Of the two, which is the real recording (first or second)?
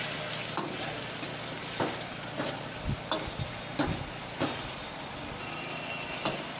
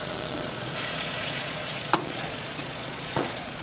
first